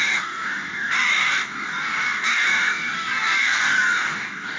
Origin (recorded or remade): remade